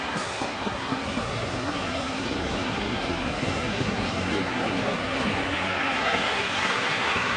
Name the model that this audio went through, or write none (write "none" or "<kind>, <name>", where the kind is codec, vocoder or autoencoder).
codec, SNAC